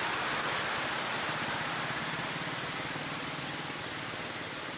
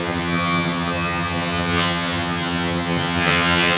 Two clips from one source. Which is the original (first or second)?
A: first